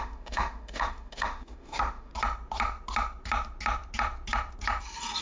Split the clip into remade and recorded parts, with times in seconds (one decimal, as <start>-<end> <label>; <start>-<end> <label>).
0.0-2.1 remade; 2.1-5.2 recorded